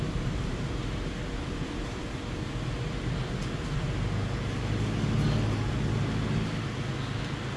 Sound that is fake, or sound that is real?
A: real